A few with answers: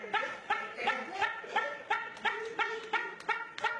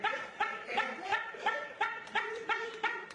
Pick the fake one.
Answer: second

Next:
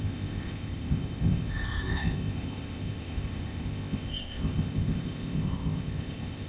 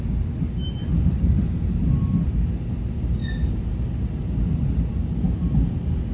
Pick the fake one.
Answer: first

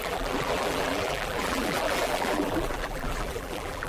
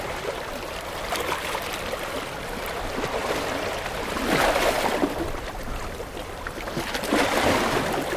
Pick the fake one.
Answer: first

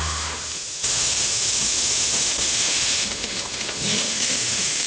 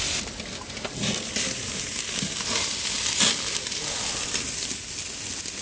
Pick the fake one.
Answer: first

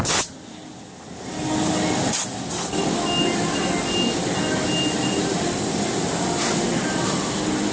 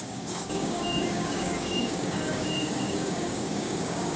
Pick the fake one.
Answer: second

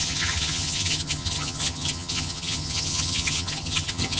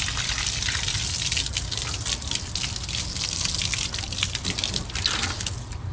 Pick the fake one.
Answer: first